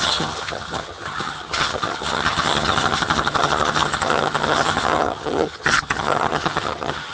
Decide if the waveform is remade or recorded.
remade